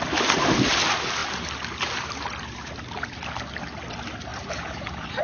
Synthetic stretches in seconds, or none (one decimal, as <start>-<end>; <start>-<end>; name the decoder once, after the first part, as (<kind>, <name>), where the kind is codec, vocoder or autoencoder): 4.3-5.2 (vocoder, BigVGAN v2)